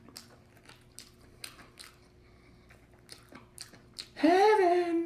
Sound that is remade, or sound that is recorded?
recorded